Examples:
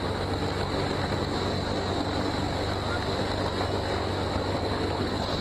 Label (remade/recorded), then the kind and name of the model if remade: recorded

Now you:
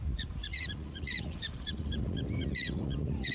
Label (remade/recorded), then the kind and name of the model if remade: remade, vocoder, Vocos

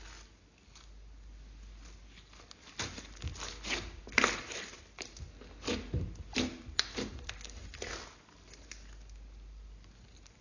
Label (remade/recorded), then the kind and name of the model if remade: recorded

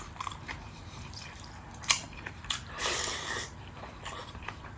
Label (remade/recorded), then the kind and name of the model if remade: remade, vocoder, BigVGAN v2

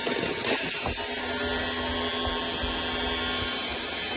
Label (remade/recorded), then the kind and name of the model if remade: recorded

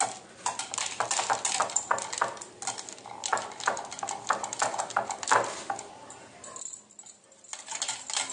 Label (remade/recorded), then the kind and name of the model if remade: recorded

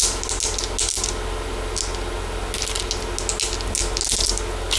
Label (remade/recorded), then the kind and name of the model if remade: recorded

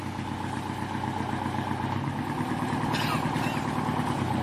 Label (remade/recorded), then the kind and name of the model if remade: recorded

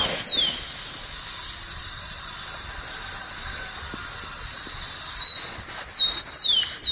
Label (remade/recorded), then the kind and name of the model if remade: recorded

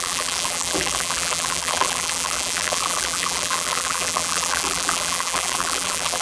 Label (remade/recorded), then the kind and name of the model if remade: remade, vocoder, BigVGAN v2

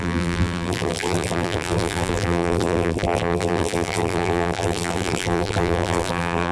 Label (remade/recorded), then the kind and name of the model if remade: remade, vocoder, BigVGAN v2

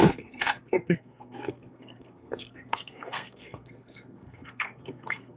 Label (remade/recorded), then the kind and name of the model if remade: remade, codec, SNAC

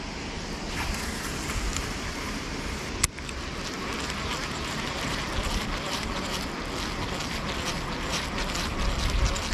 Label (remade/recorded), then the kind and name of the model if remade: remade, vocoder, BigVGAN v2